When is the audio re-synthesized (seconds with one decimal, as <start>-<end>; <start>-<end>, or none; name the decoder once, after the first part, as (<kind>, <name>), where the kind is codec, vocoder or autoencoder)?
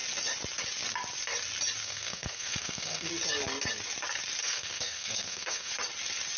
1.8-3.1 (codec, SNAC); 4.4-5.7